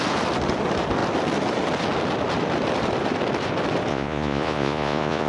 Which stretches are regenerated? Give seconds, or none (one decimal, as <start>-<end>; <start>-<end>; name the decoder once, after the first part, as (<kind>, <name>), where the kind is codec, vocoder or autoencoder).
3.9-5.3 (vocoder, Vocos)